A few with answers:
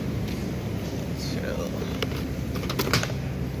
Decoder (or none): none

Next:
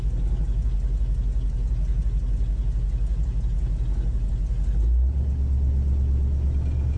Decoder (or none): none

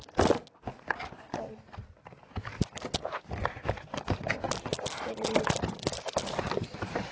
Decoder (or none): none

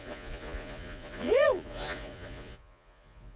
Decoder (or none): vocoder, Vocos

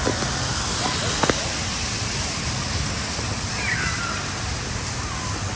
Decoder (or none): none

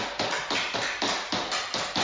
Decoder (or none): none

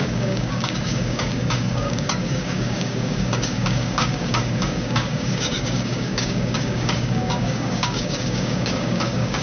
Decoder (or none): codec, DAC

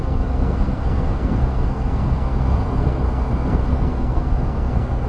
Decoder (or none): codec, SNAC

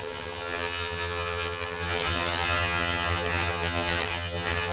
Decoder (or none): vocoder, HiFi-GAN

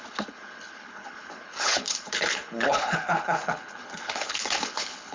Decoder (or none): codec, HILCodec